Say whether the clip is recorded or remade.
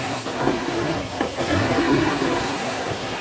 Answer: remade